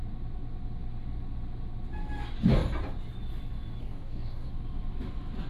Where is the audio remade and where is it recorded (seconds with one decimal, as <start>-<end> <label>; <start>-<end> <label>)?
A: 0.0-3.8 recorded; 3.8-4.5 remade; 4.5-5.5 recorded